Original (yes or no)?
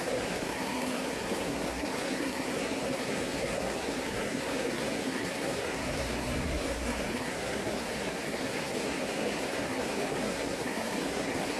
no